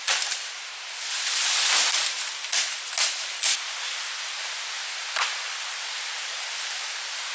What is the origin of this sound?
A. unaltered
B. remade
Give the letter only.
A